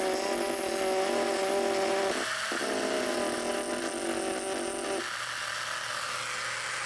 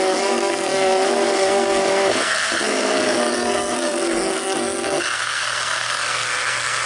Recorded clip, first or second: first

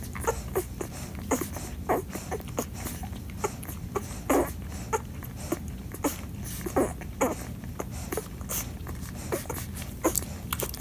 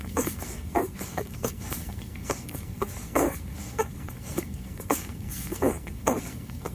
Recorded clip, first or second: first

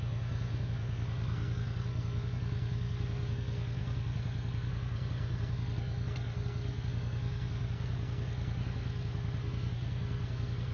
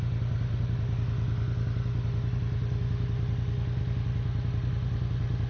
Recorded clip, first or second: second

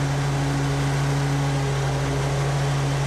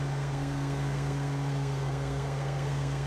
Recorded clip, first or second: first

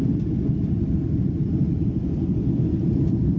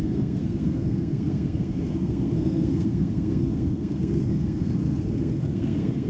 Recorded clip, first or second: first